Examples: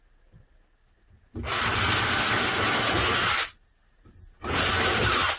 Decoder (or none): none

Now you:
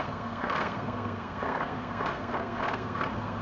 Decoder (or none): codec, SNAC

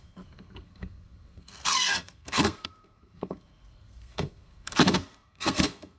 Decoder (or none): codec, SNAC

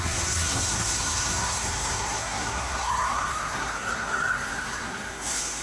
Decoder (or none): codec, SNAC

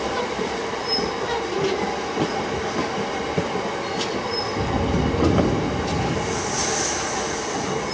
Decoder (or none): none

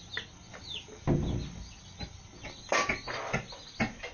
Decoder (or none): none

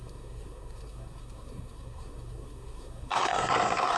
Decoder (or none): codec, SNAC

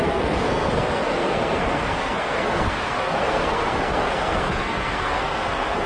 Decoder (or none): codec, SNAC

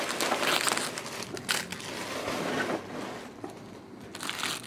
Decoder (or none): none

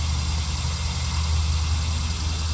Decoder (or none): none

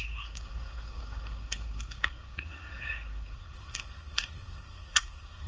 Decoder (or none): codec, SNAC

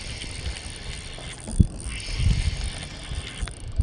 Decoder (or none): none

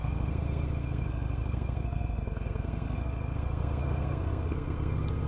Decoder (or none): codec, SNAC